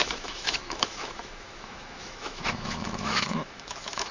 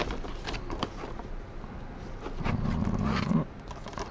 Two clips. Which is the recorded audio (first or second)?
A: second